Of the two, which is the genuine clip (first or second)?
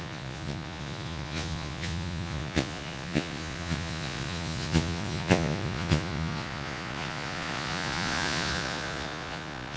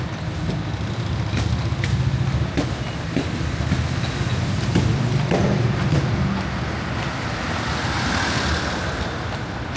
second